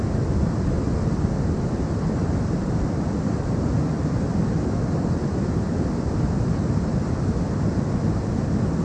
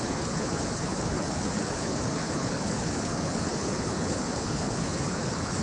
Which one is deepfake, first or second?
second